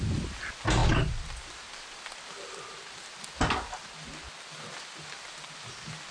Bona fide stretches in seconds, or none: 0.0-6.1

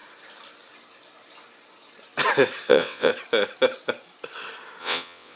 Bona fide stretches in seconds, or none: 0.0-2.7; 3.1-4.8

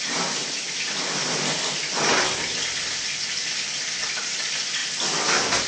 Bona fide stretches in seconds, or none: 0.0-5.7

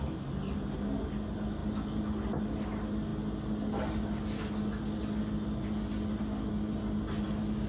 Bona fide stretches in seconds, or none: 0.0-7.7

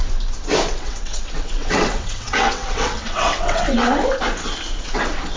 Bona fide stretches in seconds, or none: 0.0-0.7; 4.0-4.8

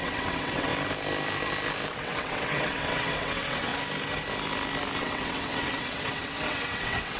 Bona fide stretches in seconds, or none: 0.7-1.9; 3.7-5.0